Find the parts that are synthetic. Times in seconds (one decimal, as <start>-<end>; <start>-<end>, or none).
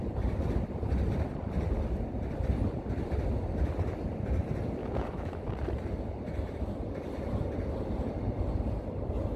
4.8-5.5